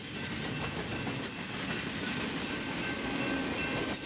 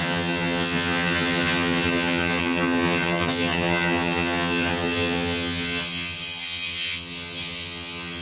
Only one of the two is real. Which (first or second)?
first